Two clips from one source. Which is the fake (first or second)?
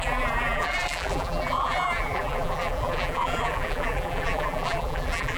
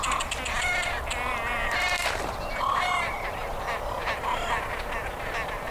first